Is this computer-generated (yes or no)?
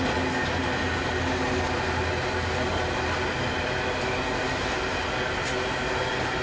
no